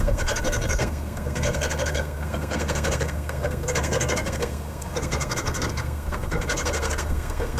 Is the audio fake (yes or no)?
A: yes